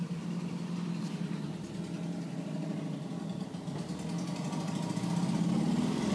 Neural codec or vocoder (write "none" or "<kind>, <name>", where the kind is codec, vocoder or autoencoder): none